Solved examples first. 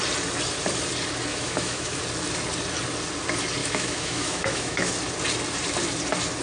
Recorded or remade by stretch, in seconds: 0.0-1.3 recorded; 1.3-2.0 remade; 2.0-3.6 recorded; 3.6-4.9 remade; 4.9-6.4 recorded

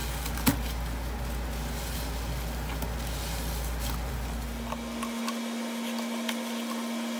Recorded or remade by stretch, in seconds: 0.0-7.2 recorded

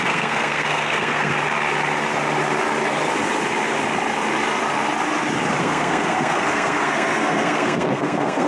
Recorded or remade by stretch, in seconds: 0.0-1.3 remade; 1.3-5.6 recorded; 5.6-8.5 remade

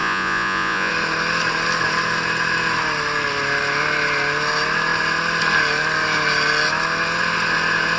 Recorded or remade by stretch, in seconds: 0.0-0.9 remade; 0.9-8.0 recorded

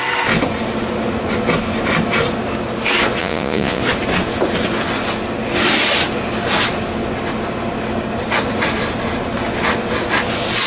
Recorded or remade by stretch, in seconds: 0.0-3.2 recorded; 3.2-3.8 remade; 3.8-10.7 recorded

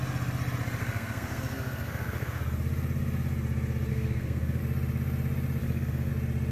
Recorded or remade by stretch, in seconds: 0.0-0.8 recorded; 0.8-2.4 remade; 2.4-3.9 recorded; 3.9-4.6 remade; 4.6-5.6 recorded; 5.6-6.1 remade; 6.1-6.5 recorded

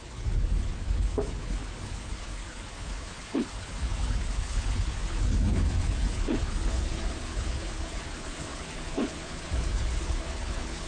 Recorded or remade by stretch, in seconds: 0.0-10.9 remade